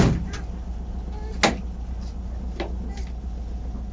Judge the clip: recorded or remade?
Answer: recorded